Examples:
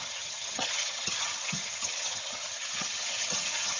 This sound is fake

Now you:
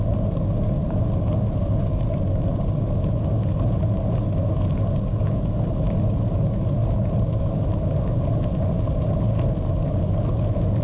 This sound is real